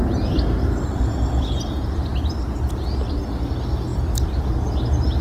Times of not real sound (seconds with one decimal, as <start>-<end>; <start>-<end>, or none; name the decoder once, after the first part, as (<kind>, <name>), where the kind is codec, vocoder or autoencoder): 0.0-1.5 (vocoder, BigVGAN v2)